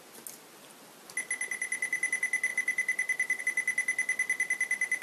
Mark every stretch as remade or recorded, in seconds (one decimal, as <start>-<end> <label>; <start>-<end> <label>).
0.0-2.5 recorded; 2.5-3.4 remade; 3.4-5.0 recorded